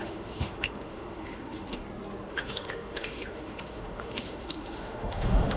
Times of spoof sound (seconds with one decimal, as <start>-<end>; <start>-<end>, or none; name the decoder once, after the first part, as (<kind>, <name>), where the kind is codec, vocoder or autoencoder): 0.0-1.8 (autoencoder, DAC-VAE); 2.3-5.6